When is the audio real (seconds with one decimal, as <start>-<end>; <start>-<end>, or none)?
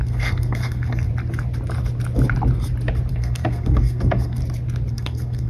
1.1-3.1; 4.4-4.9